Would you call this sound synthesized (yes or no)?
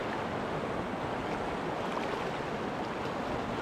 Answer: no